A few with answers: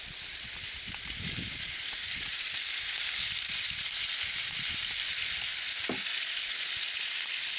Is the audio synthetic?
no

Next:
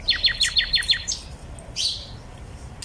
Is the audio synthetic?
no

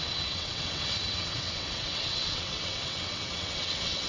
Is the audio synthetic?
yes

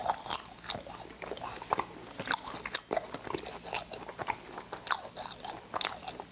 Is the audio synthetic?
no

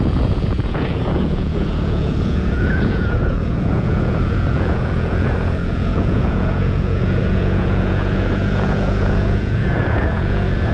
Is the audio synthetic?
yes